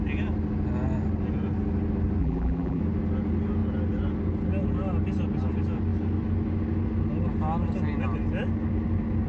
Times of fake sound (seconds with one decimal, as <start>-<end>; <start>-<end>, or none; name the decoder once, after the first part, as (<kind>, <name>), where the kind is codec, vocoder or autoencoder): 2.2-2.8 (vocoder, BigVGAN v2)